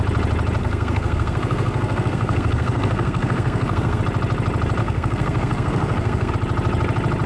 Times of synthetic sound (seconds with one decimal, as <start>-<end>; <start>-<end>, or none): 0.6-4.0; 4.8-6.3